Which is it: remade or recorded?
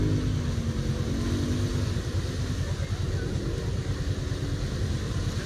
recorded